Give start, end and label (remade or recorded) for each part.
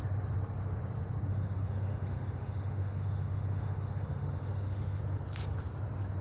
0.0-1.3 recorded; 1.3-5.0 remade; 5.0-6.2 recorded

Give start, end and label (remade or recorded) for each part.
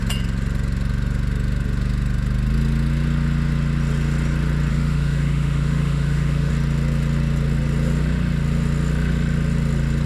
0.0-4.7 recorded; 4.7-6.5 remade; 6.5-10.1 recorded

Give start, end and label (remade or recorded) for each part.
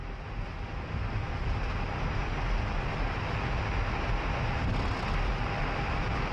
0.0-6.3 recorded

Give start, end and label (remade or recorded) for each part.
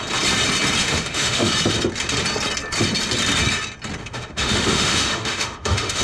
0.0-0.8 recorded; 0.8-1.5 remade; 1.5-4.0 recorded; 4.0-6.0 remade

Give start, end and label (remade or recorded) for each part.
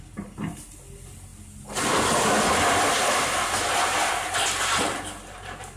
0.0-5.8 recorded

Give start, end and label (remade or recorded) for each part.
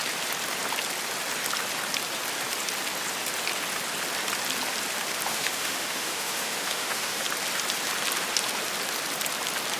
0.0-5.3 recorded; 5.3-7.2 remade; 7.2-9.8 recorded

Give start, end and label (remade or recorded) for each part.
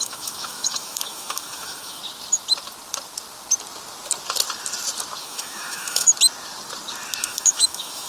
0.0-2.0 remade; 2.0-5.2 recorded; 5.2-6.1 remade; 6.1-7.2 recorded; 7.2-8.1 remade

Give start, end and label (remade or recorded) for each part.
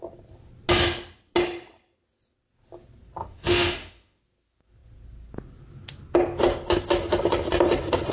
0.0-3.2 recorded; 3.2-4.2 remade; 4.2-8.1 recorded